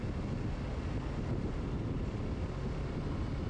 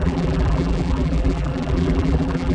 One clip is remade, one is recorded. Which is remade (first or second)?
second